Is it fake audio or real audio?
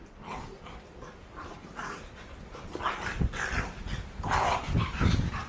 real